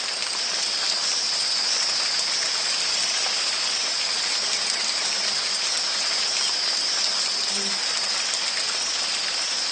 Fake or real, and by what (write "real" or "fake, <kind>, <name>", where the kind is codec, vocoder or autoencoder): real